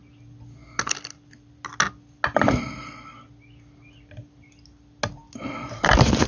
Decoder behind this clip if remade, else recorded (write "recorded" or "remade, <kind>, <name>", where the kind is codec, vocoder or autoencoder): recorded